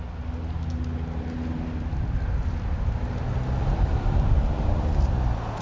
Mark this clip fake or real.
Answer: real